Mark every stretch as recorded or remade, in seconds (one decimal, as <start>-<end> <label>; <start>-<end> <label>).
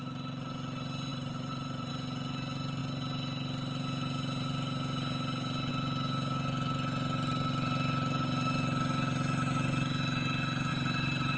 0.0-1.1 recorded; 1.1-1.9 remade; 1.9-10.7 recorded; 10.7-11.4 remade